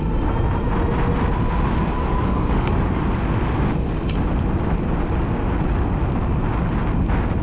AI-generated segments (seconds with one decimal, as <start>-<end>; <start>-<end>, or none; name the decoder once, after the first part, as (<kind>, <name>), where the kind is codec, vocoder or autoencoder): 1.9-3.0 (codec, DAC)